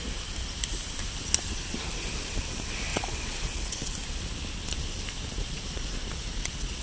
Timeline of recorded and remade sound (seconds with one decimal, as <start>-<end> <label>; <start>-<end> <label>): 0.0-2.9 recorded; 2.9-3.9 remade; 3.9-5.4 recorded; 5.4-6.8 remade